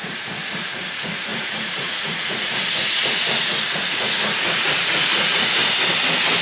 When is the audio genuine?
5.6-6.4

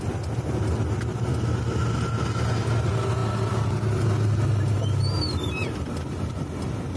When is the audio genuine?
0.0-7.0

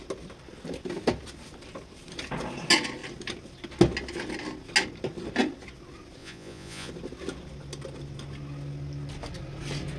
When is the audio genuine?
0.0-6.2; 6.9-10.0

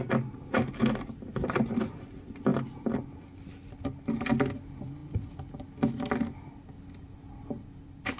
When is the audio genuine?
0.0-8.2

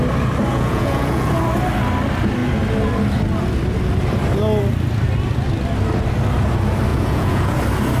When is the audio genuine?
0.0-0.5; 1.3-6.9; 7.6-8.0

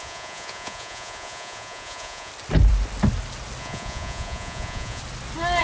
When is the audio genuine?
2.3-3.6; 5.0-5.6

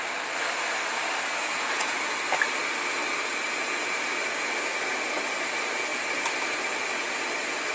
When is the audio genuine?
0.0-1.5; 2.0-7.7